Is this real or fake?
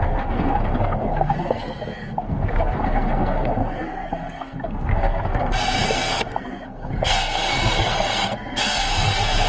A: fake